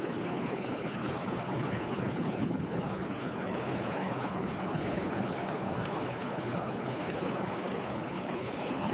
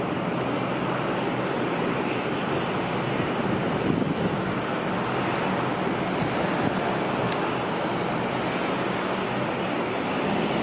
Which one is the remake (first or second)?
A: first